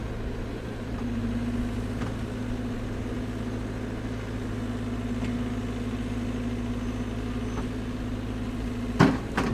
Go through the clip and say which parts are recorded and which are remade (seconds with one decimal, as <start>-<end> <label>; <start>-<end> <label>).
0.0-0.5 recorded; 0.5-1.0 remade; 1.0-9.5 recorded